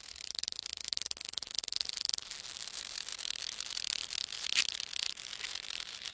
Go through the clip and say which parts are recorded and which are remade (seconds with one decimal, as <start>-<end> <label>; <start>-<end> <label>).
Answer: 0.0-6.1 recorded